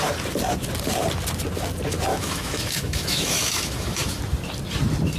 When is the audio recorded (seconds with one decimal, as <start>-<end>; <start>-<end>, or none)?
0.0-2.1; 4.2-5.2